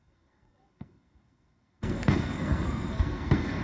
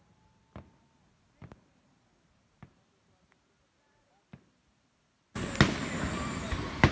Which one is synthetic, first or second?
first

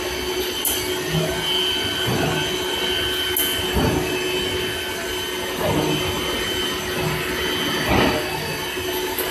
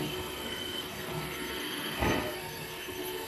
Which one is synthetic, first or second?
second